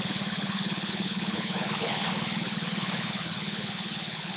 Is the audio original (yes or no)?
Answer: no